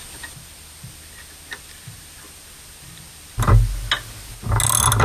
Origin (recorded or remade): recorded